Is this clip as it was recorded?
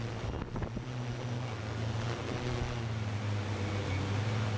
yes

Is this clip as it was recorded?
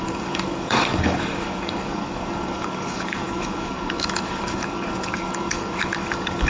no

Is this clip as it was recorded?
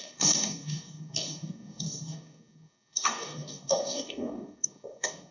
no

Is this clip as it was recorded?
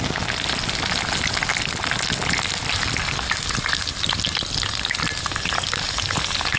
yes